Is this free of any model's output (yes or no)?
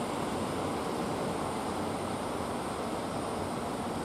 yes